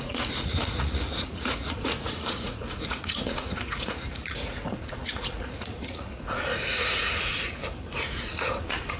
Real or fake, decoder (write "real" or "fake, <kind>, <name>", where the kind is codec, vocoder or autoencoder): fake, vocoder, Vocos